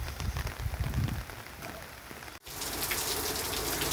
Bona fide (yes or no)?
yes